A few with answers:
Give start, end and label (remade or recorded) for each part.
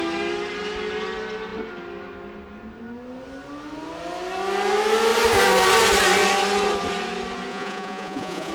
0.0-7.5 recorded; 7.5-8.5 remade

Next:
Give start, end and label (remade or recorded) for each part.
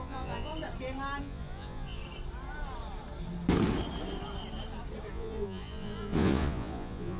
0.0-0.5 remade; 0.5-1.2 recorded; 1.2-2.0 remade; 2.0-5.1 recorded; 5.1-7.2 remade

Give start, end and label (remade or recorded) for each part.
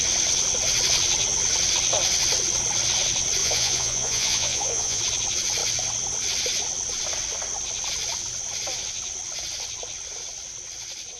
0.0-3.4 recorded; 3.4-5.0 remade; 5.0-11.2 recorded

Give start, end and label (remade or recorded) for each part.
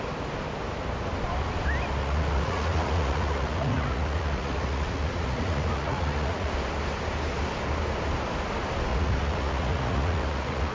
0.0-2.0 recorded; 2.0-6.5 remade; 6.5-8.9 recorded; 8.9-10.7 remade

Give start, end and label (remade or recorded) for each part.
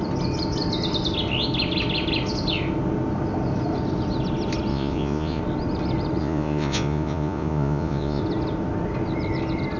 0.0-4.7 recorded; 4.7-5.4 remade; 5.4-6.2 recorded; 6.2-8.2 remade; 8.2-9.8 recorded